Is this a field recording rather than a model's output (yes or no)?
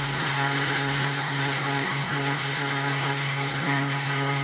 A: no